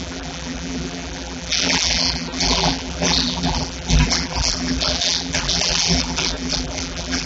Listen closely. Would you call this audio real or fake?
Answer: fake